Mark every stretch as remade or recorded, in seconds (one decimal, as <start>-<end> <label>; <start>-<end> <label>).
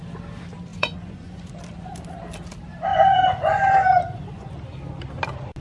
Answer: 0.0-0.7 recorded; 0.7-1.6 remade; 1.6-2.9 recorded; 2.9-4.5 remade; 4.5-5.6 recorded